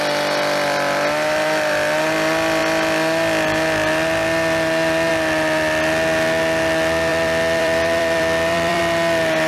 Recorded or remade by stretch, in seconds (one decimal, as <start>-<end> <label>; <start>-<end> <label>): 0.0-7.1 recorded; 7.1-8.8 remade; 8.8-9.5 recorded